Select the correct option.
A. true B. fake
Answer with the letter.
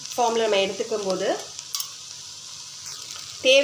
A